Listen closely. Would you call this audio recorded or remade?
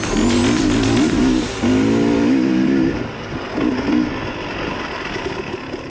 recorded